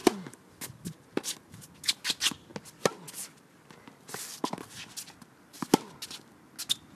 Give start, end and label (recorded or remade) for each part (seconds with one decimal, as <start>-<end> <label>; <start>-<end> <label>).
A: 0.0-0.6 remade; 0.6-6.9 recorded